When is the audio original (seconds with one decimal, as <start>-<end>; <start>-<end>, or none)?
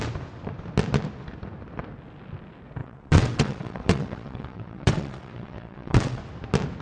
0.0-2.8; 6.2-6.8